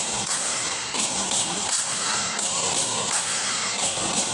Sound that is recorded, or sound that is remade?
remade